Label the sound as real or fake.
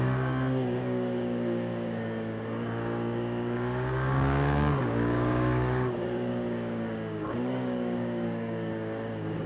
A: fake